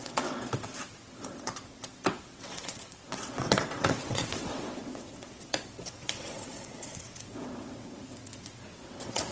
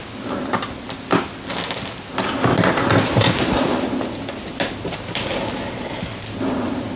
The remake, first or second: first